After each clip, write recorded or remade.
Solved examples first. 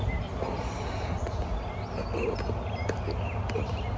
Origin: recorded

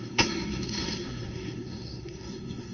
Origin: remade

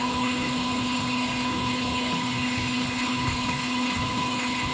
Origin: remade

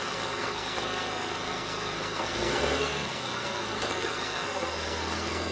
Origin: remade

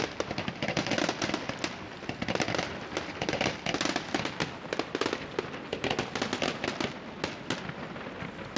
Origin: recorded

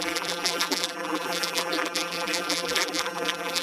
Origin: remade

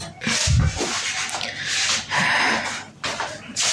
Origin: recorded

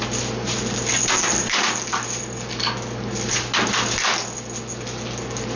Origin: recorded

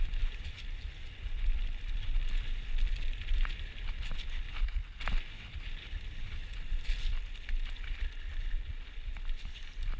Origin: remade